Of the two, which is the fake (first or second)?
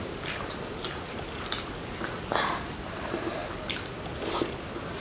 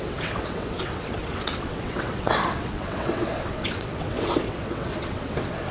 second